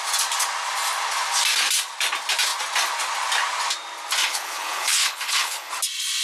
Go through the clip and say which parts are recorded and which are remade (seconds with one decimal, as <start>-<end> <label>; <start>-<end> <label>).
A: 0.0-4.2 recorded; 4.2-5.7 remade; 5.7-6.2 recorded